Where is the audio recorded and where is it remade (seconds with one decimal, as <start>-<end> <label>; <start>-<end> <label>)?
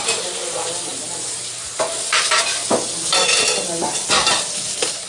0.0-5.1 recorded